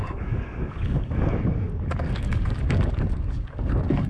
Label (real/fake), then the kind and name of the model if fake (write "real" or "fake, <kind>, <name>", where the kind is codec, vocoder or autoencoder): fake, codec, DAC